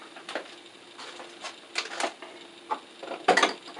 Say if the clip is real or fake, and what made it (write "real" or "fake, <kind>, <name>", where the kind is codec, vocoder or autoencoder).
real